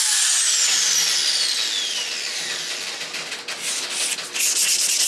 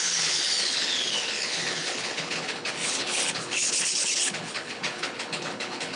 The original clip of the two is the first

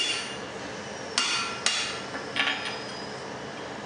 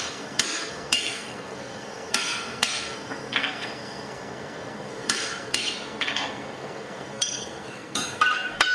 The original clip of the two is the first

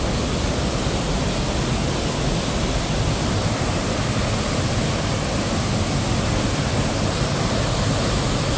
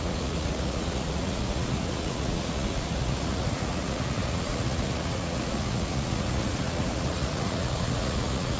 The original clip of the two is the first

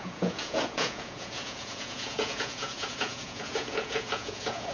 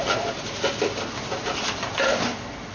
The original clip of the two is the second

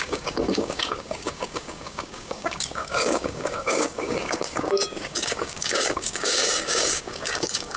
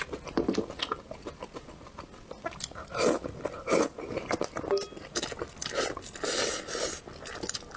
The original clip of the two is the second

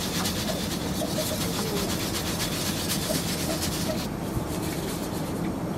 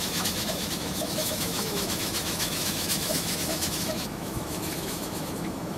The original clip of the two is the first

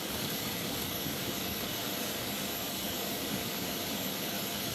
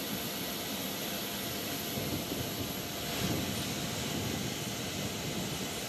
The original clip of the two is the second